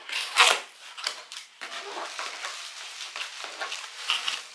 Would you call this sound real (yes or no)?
yes